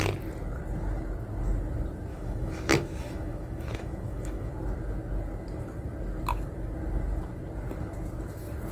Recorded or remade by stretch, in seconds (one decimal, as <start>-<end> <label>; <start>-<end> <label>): 0.0-2.1 recorded; 2.1-4.5 remade; 4.5-8.7 recorded